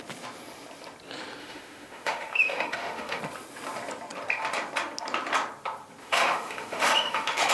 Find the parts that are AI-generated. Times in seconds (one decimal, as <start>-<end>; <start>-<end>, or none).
1.4-3.2; 6.0-7.5